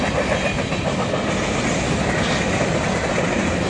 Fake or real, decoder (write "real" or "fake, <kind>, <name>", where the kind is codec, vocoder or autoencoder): real